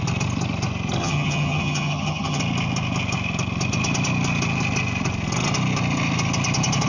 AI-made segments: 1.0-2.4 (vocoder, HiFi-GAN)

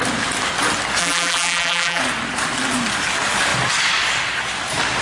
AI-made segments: 1.0-2.0 (vocoder, BigVGAN v2)

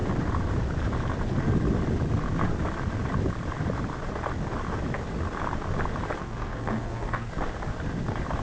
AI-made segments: 6.2-7.3 (codec, SNAC)

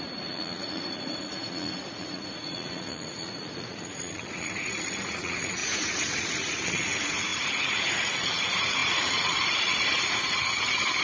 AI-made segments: 0.0-11.0 (vocoder, Vocos)

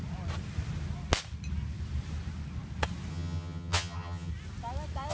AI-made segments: 3.1-4.3 (vocoder, HiFi-GAN)

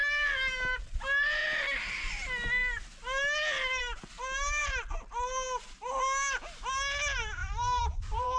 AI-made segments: 7.4-8.4 (vocoder, BigVGAN v2)

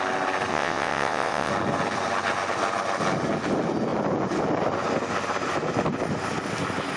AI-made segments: 0.5-1.5 (vocoder, WaveNeXt)